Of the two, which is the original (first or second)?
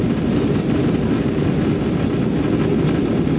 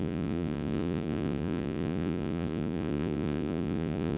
first